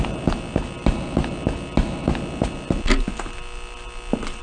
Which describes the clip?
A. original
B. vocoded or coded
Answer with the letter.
A